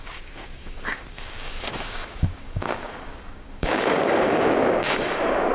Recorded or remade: remade